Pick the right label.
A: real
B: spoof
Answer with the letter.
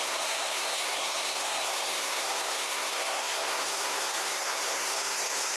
B